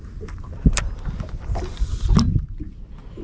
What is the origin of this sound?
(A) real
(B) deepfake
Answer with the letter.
A